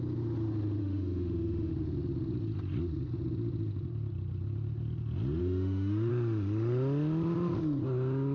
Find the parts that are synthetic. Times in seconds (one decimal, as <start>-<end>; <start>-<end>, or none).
0.8-1.7; 5.4-6.1